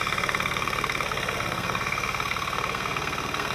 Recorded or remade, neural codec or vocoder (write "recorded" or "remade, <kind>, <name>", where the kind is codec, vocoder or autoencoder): remade, codec, SNAC